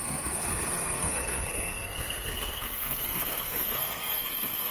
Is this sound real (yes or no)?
no